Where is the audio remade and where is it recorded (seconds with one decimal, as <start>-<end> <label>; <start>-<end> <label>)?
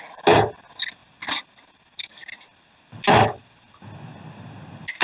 0.0-5.0 recorded